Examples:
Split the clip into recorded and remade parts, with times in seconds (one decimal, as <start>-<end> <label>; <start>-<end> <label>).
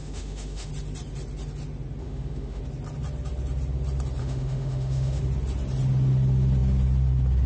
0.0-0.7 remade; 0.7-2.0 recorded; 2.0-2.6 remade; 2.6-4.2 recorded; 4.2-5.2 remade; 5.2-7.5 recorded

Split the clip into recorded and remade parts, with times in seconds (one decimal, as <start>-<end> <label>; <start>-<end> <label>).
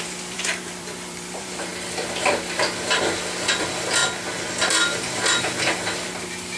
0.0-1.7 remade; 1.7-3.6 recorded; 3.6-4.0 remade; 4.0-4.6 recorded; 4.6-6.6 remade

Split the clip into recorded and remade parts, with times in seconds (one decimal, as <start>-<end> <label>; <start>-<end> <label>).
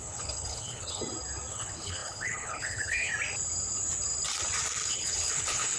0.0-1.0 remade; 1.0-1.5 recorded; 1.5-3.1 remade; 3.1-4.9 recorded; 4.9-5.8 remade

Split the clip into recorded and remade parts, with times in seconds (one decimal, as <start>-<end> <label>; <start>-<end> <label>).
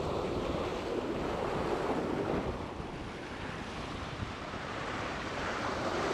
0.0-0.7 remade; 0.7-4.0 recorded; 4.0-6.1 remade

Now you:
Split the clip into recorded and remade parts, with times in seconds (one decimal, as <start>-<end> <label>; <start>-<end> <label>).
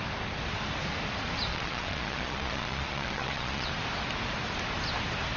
0.0-1.5 recorded; 1.5-3.7 remade; 3.7-5.4 recorded